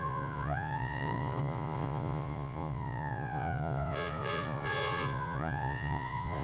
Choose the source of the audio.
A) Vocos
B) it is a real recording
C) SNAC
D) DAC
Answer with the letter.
A